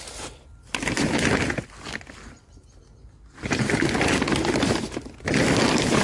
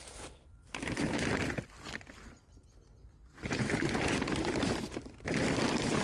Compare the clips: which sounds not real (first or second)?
second